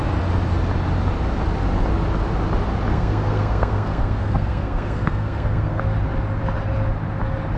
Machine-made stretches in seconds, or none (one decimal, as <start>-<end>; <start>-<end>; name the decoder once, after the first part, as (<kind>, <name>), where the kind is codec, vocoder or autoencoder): 2.9-5.8 (codec, SNAC)